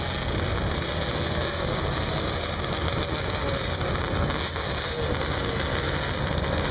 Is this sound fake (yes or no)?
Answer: no